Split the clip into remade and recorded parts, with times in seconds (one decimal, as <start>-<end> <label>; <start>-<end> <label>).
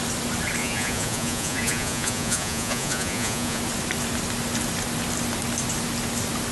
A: 0.0-0.6 recorded; 0.6-3.6 remade; 3.6-6.5 recorded